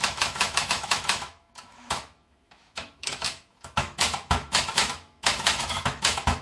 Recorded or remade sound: remade